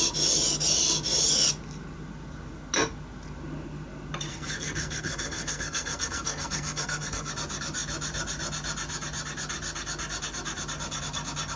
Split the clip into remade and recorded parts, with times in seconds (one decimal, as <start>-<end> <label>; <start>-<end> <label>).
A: 0.0-4.3 recorded; 4.3-7.3 remade; 7.3-11.6 recorded